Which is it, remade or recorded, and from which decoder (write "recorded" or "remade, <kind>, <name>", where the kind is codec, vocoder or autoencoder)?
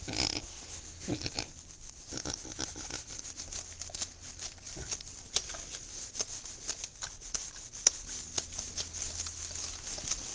recorded